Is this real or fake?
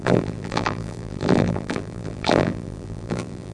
fake